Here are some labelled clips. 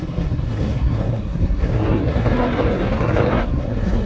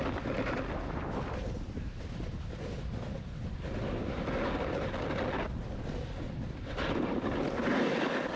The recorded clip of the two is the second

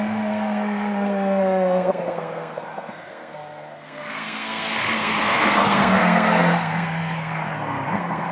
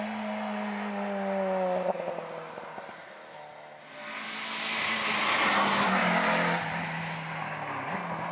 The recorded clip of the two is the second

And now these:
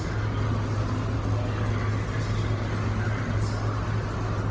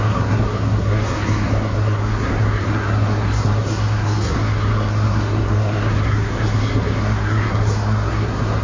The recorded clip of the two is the first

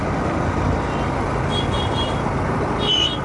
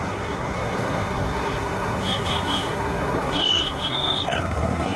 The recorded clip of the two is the first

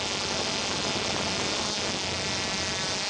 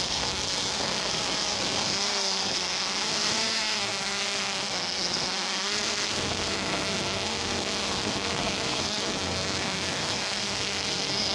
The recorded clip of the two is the first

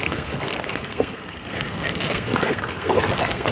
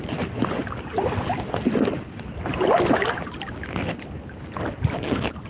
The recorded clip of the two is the second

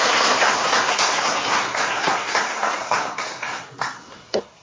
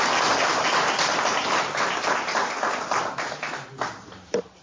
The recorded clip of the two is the second